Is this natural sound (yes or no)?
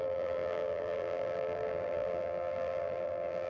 no